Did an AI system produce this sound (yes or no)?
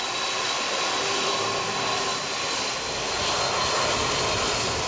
no